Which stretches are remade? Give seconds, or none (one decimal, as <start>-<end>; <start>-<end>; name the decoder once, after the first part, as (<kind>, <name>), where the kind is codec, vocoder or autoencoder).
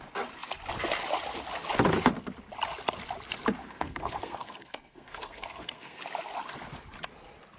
3.6-6.0 (codec, SNAC)